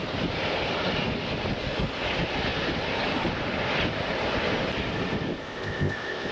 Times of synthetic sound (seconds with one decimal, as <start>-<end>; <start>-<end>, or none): 5.4-6.3